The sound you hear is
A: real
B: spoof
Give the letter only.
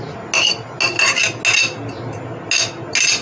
A